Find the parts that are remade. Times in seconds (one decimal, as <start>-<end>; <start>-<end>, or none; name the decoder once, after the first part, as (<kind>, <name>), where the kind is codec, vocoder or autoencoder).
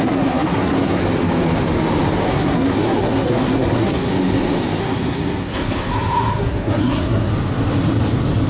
0.0-1.0 (codec, SNAC); 2.3-4.1; 4.8-7.3